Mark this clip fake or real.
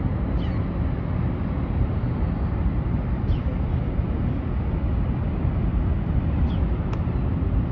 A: real